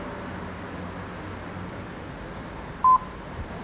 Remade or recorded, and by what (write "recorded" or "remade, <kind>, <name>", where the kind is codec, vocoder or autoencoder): recorded